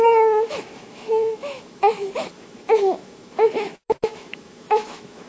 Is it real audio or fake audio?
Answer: fake